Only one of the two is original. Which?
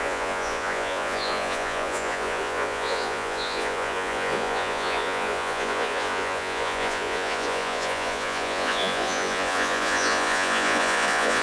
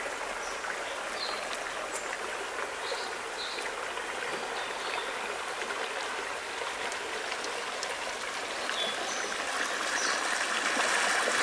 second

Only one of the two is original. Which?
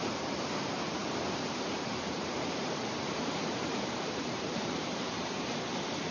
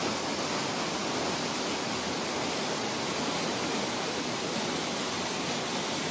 second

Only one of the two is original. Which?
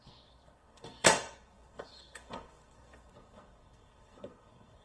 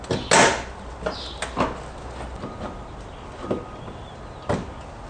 second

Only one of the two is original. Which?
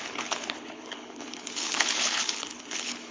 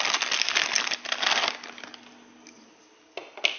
second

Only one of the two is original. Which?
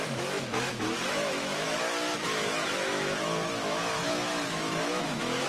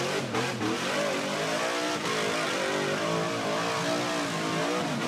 second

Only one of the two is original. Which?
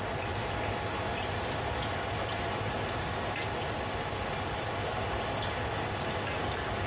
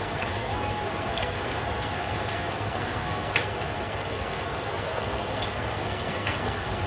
first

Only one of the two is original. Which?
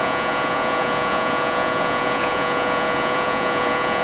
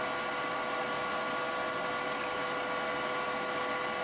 second